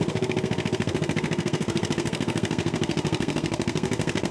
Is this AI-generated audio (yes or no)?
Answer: yes